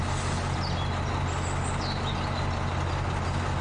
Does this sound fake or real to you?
real